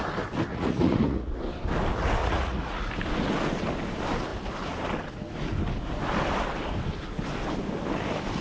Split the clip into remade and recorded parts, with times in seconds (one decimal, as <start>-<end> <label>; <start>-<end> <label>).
0.0-0.5 recorded; 0.5-1.3 remade; 1.3-2.2 recorded; 2.2-2.9 remade; 2.9-8.4 recorded